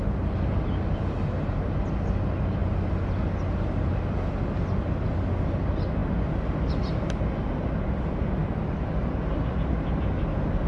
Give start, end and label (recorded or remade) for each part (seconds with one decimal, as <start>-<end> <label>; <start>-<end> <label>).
0.0-10.7 recorded